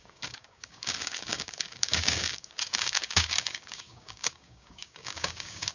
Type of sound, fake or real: fake